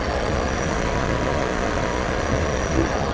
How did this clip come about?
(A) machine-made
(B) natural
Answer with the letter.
A